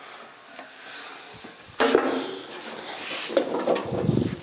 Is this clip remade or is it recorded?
recorded